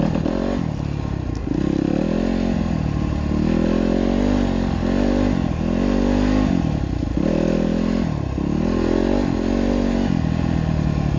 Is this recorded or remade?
recorded